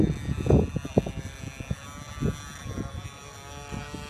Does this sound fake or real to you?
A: real